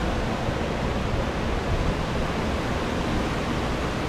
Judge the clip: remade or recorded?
recorded